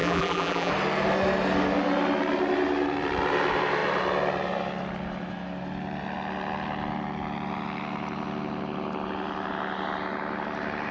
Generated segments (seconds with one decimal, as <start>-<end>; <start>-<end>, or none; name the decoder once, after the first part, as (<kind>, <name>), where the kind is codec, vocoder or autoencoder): 0.0-0.7 (vocoder, BigVGAN v2)